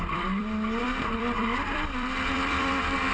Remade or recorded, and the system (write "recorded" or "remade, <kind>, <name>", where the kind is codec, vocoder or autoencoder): remade, vocoder, BigVGAN v2